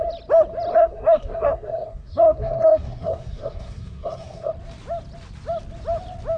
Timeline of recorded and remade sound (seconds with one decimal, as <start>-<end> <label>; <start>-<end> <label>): 0.0-0.7 recorded; 0.7-4.5 remade; 4.5-6.4 recorded